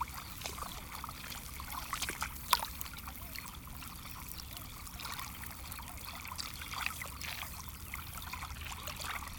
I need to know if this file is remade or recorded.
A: recorded